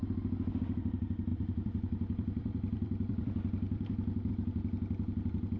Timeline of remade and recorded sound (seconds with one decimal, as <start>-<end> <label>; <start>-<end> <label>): 0.0-1.3 recorded; 1.3-4.3 remade; 4.3-5.6 recorded

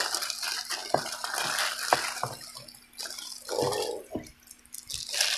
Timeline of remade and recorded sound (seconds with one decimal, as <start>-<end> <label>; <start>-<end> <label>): 0.0-5.4 recorded

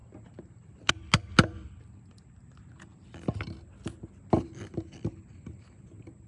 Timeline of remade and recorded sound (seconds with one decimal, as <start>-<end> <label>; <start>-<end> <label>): 0.0-0.9 remade; 0.9-6.3 recorded

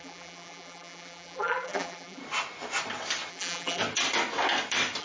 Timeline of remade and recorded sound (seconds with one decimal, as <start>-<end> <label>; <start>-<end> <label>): 0.0-2.2 remade; 2.2-3.3 recorded; 3.3-3.8 remade; 3.8-5.0 recorded